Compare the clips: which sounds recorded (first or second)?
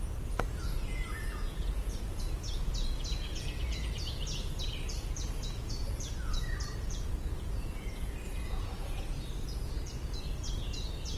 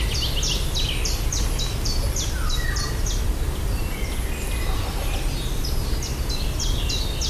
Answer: second